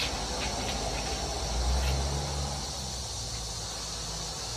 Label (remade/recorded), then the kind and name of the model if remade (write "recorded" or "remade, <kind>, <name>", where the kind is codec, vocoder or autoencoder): recorded